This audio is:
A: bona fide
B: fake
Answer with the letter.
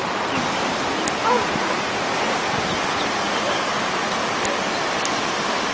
A